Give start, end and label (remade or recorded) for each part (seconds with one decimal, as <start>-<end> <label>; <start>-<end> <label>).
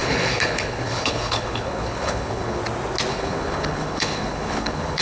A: 0.0-2.6 remade; 2.6-3.1 recorded; 3.1-5.0 remade